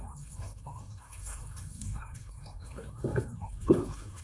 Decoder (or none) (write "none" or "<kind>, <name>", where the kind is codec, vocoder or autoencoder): codec, SNAC